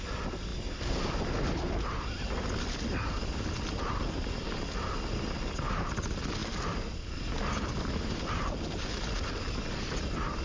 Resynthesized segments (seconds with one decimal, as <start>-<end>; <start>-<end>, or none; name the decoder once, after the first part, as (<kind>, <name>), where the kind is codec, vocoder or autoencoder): none